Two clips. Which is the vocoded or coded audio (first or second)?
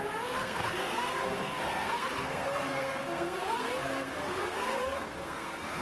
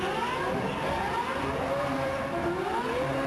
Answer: first